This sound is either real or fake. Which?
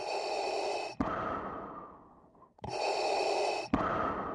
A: real